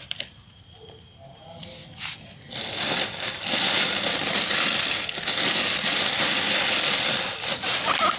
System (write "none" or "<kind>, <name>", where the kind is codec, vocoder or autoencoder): none